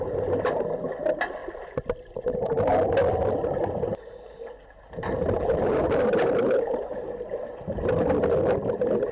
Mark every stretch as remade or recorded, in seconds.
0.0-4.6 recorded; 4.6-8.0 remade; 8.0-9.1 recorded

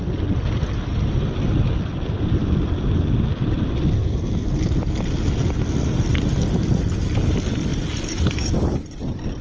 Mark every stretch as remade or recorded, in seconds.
0.0-7.7 recorded; 7.7-8.9 remade; 8.9-9.4 recorded

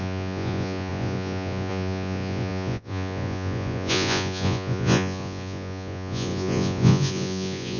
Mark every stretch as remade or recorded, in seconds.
0.0-7.8 remade